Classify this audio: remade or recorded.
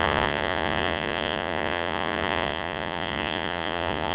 remade